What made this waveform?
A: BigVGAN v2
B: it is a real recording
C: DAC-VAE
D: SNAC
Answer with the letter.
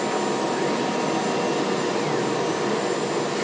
B